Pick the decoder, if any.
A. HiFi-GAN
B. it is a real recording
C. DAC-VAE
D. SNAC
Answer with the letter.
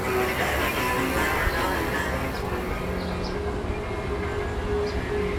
B